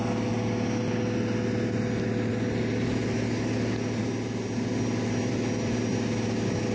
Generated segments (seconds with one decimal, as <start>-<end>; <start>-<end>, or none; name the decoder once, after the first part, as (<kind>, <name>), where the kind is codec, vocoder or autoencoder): none